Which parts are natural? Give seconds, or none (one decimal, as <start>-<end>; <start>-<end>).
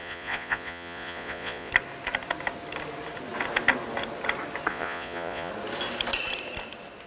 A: 1.7-4.7; 5.5-7.1